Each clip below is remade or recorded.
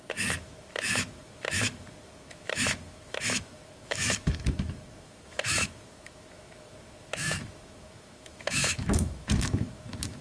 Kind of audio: remade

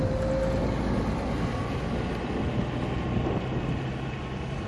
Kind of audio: recorded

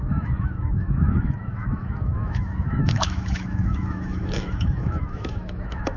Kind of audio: remade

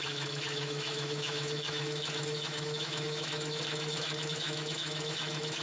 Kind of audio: remade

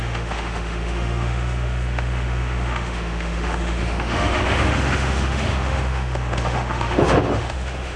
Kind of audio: remade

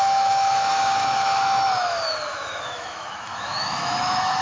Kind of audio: remade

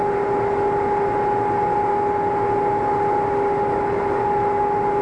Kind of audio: recorded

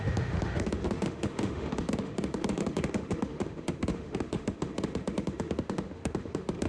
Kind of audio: remade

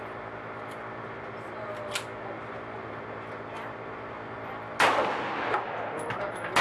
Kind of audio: recorded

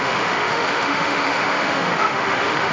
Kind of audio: remade